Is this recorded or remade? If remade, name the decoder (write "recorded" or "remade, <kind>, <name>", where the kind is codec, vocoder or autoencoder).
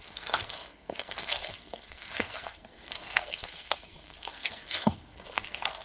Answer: remade, codec, SNAC